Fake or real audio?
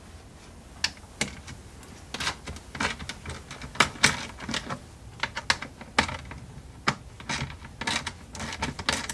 real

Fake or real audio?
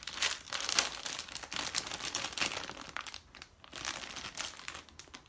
real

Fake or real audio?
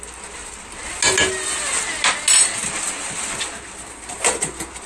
real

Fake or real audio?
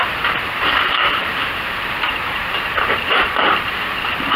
fake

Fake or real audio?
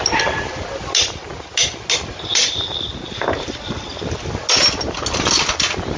real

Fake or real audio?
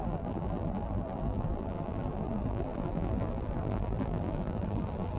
fake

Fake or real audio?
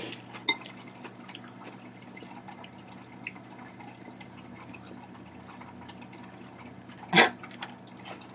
real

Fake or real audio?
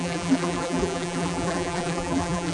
fake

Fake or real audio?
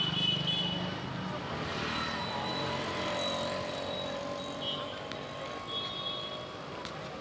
real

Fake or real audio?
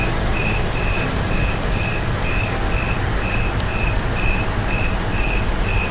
real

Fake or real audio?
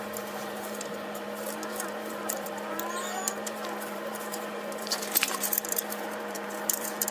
fake